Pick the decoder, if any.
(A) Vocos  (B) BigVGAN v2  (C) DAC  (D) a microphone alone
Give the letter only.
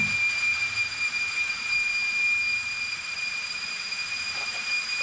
B